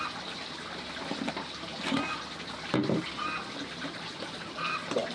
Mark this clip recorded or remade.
recorded